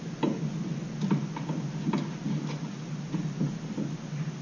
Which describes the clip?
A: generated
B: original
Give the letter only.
B